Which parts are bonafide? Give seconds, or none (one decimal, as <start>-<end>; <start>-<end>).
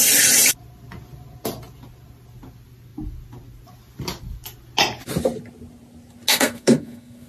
0.0-6.3